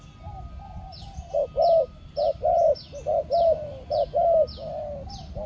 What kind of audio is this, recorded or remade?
recorded